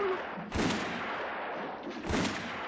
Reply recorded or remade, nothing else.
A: recorded